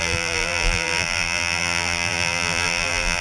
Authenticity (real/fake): fake